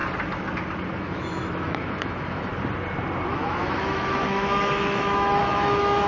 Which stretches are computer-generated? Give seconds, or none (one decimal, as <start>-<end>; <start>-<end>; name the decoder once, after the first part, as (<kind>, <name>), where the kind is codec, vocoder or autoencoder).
1.0-2.5 (autoencoder, DAC-VAE); 3.3-6.1